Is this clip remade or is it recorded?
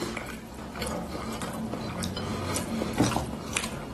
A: recorded